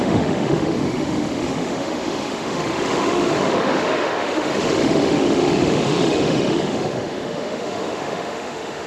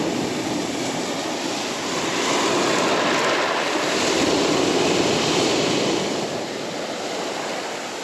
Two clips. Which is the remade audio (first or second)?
first